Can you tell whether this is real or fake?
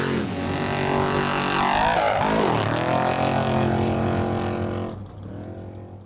real